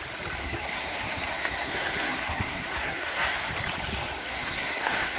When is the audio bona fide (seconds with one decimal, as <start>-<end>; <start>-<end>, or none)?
0.0-0.4; 3.5-4.2